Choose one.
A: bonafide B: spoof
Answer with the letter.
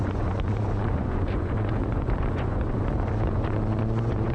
B